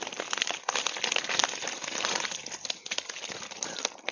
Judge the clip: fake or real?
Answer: real